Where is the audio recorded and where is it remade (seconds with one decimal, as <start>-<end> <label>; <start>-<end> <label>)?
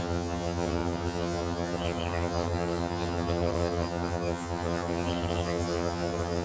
0.0-6.4 remade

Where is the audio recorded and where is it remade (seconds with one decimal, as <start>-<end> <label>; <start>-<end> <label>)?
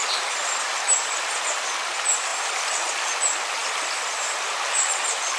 0.0-1.4 remade; 1.4-2.3 recorded; 2.3-2.9 remade; 2.9-5.4 recorded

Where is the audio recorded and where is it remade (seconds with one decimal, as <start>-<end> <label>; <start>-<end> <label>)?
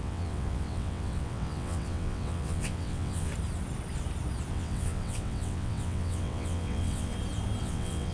0.0-3.3 remade; 3.3-4.5 recorded; 4.5-7.1 remade; 7.1-7.6 recorded; 7.6-8.1 remade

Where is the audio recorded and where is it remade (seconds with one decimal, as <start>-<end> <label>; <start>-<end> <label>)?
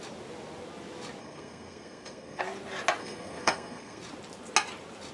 0.0-1.2 recorded; 1.2-2.4 remade; 2.4-3.0 recorded; 3.0-4.0 remade; 4.0-5.1 recorded